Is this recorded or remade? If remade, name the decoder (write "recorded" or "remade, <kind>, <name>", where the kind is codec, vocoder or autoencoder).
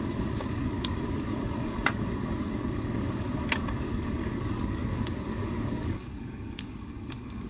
remade, codec, DAC